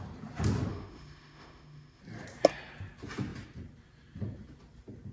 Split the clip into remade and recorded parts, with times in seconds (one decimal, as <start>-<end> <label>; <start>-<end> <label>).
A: 0.0-0.7 recorded; 0.7-2.0 remade; 2.0-5.1 recorded